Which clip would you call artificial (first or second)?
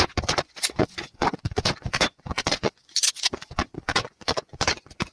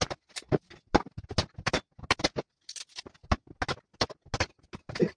first